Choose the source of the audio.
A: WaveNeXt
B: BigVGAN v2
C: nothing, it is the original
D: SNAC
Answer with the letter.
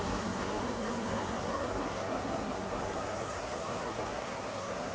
D